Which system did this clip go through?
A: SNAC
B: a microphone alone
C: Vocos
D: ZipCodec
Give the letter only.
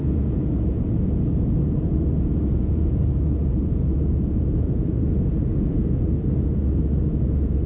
C